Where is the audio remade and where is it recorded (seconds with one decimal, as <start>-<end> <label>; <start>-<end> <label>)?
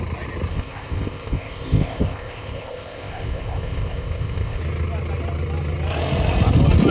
0.0-0.5 recorded; 0.5-4.6 remade; 4.6-6.9 recorded